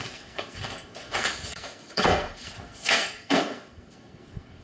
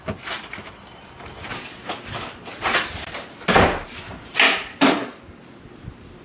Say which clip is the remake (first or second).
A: first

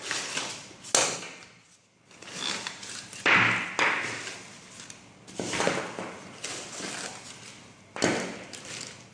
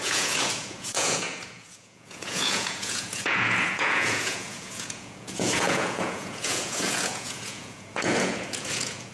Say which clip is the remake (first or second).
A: second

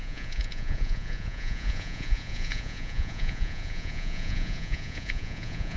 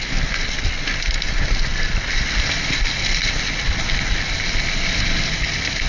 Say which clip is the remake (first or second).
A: first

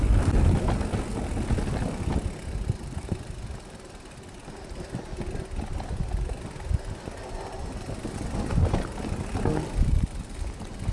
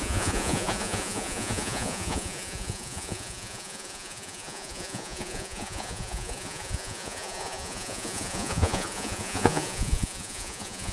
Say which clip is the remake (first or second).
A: second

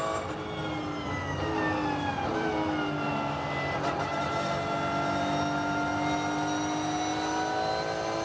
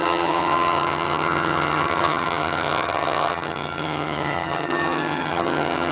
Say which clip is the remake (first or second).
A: second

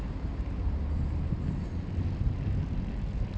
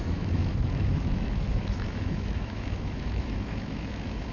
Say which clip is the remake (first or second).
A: second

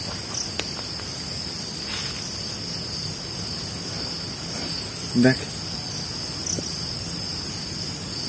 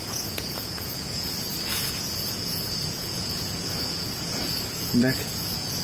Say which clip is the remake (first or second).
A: second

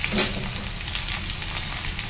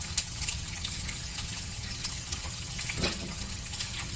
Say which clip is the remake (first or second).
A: second